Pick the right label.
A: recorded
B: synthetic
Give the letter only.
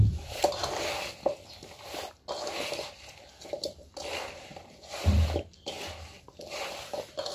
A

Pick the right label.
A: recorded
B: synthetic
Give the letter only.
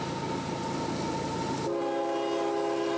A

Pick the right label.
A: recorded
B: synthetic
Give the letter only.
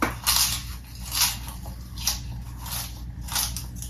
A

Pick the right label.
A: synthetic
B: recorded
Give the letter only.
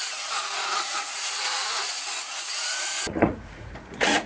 A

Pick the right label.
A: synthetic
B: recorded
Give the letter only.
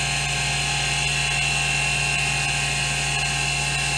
B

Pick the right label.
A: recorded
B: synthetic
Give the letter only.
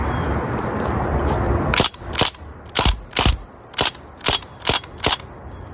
A